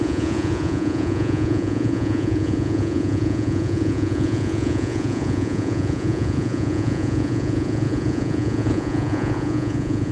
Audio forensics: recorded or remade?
remade